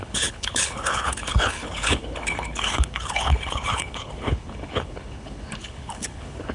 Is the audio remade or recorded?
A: remade